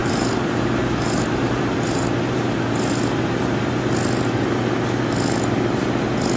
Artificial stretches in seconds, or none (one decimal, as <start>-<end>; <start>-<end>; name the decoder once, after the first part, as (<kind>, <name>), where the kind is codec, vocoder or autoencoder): 0.0-3.8 (vocoder, BigVGAN v2)